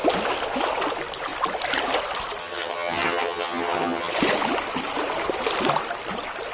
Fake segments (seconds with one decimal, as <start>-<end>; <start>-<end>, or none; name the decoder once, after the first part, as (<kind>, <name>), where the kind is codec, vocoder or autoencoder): 2.4-4.1 (vocoder, HiFi-GAN)